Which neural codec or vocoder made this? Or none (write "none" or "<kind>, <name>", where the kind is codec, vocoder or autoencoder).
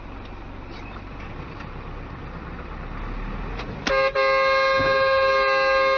none